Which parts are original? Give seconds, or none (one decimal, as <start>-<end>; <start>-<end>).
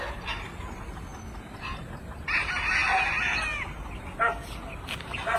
0.0-5.4